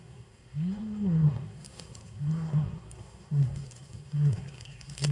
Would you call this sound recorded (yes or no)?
no